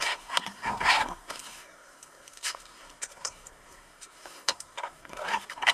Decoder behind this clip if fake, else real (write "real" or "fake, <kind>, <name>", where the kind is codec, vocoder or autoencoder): fake, codec, SNAC